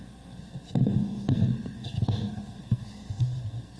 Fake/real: fake